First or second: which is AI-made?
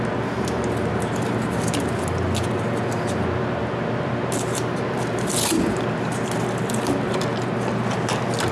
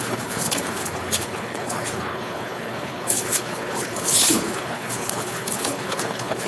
second